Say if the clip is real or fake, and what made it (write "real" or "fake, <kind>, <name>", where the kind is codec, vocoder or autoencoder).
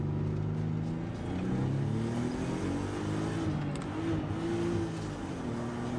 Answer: real